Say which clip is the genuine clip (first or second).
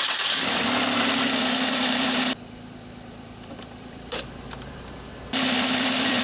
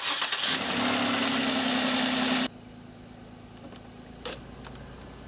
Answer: second